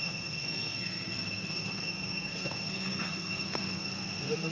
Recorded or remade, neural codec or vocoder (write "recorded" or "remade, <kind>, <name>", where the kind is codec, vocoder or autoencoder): remade, codec, SNAC